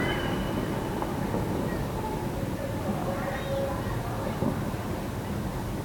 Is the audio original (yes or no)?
yes